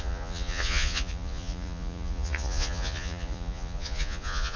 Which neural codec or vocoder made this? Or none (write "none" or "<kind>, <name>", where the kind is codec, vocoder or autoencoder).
vocoder, Vocos